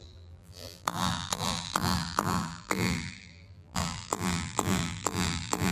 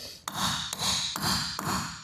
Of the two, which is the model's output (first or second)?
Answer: first